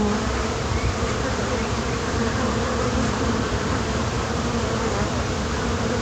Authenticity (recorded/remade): remade